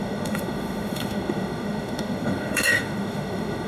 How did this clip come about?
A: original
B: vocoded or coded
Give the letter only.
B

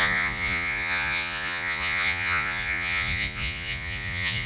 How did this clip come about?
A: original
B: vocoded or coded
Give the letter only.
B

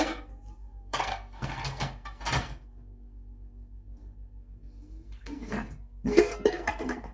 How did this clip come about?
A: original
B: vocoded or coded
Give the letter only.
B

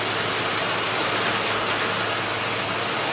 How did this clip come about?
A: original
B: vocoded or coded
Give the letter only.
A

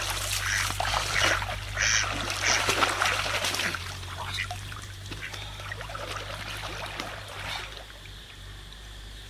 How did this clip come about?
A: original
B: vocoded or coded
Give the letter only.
A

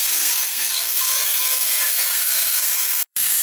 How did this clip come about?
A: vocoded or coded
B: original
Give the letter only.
A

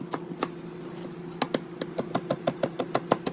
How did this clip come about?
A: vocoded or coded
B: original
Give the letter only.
B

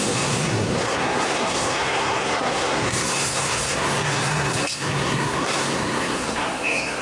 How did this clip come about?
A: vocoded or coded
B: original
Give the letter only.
A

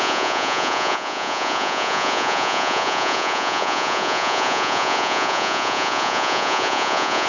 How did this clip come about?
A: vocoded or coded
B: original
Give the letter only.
A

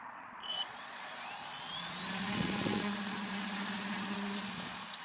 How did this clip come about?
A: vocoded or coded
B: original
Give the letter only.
A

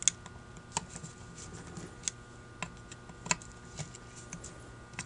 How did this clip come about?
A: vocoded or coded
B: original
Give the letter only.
B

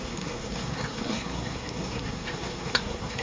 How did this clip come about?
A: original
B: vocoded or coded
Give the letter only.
B